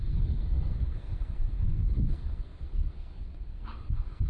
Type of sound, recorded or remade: remade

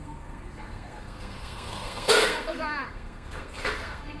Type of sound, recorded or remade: remade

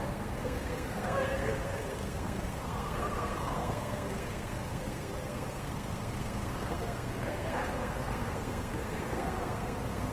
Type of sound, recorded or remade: remade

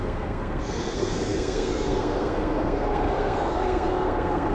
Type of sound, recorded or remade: remade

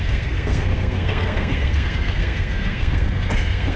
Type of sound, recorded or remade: remade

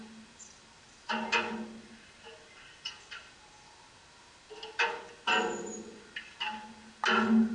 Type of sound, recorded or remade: recorded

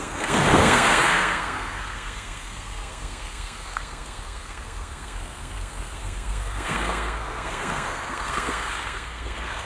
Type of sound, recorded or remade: remade